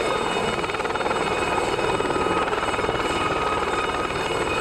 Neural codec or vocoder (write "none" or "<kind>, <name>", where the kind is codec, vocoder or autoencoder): none